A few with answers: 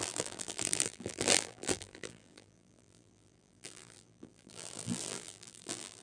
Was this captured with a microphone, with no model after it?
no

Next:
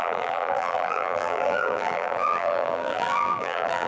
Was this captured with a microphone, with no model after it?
no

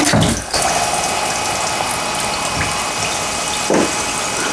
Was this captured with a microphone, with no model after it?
yes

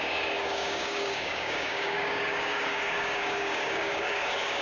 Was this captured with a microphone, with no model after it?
no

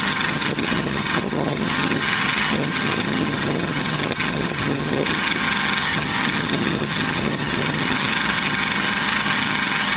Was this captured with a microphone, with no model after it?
no